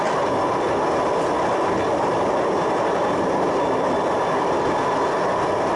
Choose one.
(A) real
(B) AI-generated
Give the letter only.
A